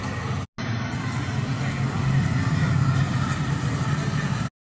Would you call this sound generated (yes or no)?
no